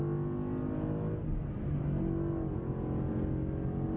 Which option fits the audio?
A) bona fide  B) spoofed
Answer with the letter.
A